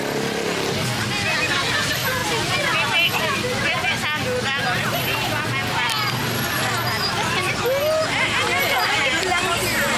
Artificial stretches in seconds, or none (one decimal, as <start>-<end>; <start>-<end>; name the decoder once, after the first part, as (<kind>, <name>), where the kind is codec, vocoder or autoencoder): none